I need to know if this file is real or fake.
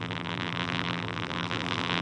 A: fake